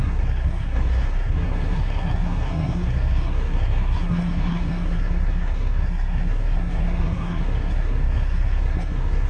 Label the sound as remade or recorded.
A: remade